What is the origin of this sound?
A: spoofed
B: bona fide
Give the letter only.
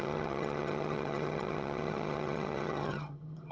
A